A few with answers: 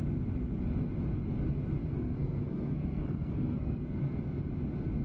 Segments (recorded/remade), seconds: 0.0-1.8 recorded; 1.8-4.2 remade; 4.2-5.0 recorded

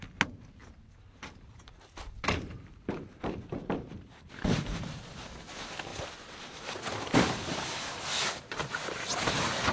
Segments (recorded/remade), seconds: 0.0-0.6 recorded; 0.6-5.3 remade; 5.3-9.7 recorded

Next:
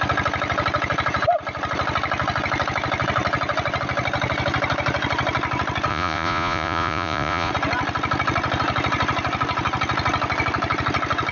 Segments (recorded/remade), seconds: 0.0-5.9 recorded; 5.9-7.5 remade; 7.5-11.3 recorded